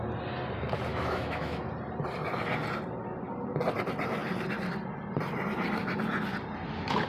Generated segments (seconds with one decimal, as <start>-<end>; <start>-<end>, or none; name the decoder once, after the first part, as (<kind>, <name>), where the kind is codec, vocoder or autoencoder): 0.9-1.6 (autoencoder, DAC-VAE)

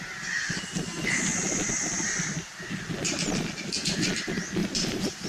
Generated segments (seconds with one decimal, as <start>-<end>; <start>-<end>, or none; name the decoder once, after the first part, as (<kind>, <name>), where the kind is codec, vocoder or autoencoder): 4.6-5.3 (vocoder, BigVGAN v2)

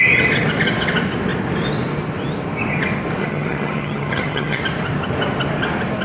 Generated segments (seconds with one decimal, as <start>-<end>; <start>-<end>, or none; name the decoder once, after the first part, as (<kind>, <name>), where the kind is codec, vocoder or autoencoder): 3.2-4.6 (vocoder, HiFi-GAN)